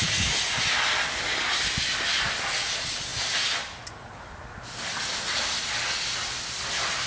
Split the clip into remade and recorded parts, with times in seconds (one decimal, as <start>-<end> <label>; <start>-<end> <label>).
0.0-7.1 recorded